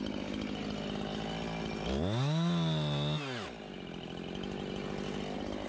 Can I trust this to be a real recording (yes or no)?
yes